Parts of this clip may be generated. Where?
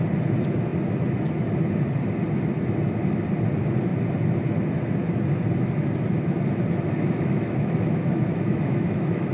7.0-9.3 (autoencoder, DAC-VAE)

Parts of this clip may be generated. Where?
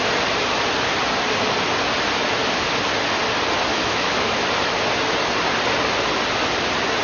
3.7-4.4 (autoencoder, DAC-VAE)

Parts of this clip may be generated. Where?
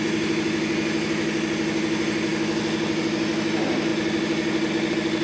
none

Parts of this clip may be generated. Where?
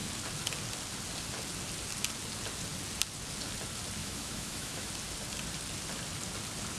4.0-4.9 (autoencoder, DAC-VAE)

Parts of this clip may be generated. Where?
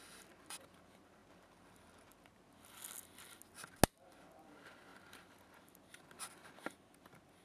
none